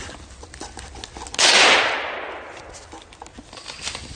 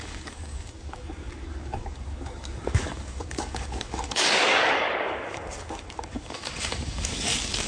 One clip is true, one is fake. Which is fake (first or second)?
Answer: second